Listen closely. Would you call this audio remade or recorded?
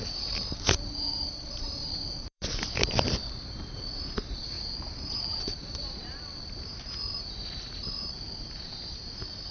remade